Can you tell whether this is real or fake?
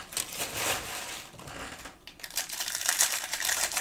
fake